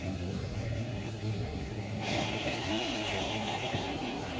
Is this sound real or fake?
fake